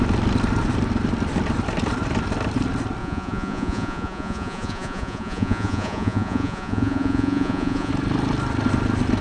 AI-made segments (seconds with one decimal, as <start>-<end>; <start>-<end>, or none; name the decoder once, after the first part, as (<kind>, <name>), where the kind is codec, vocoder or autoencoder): 3.0-7.9 (vocoder, Vocos)